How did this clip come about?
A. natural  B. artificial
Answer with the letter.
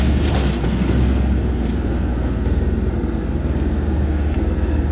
B